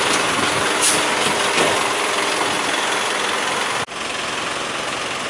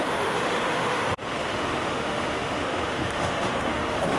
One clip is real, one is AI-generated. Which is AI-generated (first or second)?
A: second